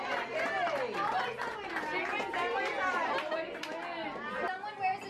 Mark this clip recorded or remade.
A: recorded